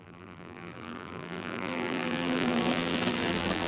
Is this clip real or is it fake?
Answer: fake